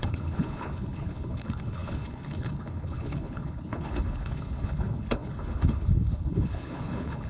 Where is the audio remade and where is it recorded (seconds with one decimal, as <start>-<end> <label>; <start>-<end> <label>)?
0.0-7.3 remade